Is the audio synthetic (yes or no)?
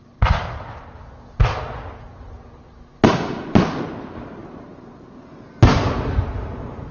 no